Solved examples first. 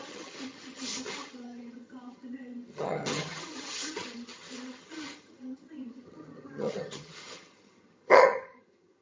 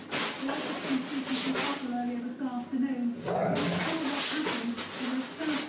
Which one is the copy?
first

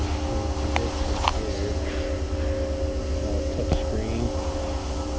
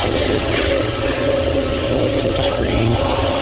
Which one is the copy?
second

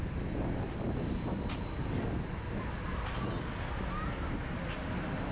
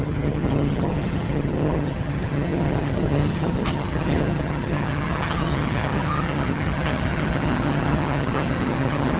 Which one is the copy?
second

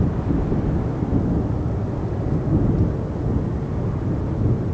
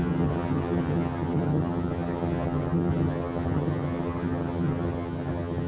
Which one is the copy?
second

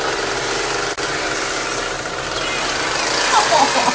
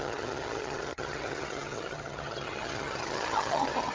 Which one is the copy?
second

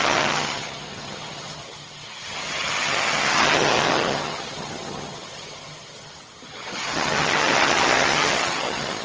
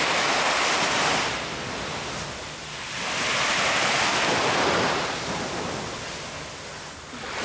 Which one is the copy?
first